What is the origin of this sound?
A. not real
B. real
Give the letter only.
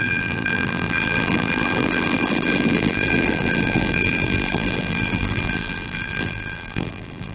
A